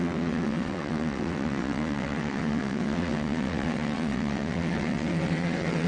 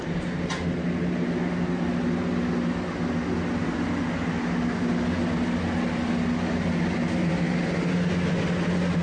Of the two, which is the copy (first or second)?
first